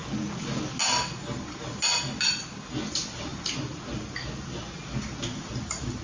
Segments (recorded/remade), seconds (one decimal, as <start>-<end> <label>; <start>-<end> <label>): 0.0-6.0 recorded